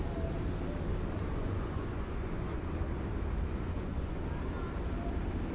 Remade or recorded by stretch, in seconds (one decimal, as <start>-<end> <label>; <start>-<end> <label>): 0.0-1.3 recorded; 1.3-2.6 remade; 2.6-3.5 recorded; 3.5-4.2 remade; 4.2-5.5 recorded